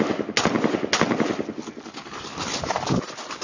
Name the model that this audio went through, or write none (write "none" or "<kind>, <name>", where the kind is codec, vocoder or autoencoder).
none